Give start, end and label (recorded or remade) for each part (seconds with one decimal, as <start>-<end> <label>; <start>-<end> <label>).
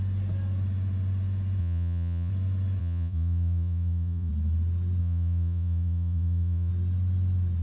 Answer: 0.0-1.6 recorded; 1.6-2.3 remade; 2.3-2.8 recorded; 2.8-4.3 remade; 4.3-5.0 recorded; 5.0-6.7 remade; 6.7-7.6 recorded